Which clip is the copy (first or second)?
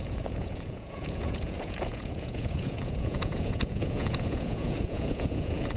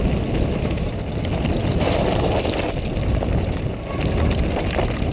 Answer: first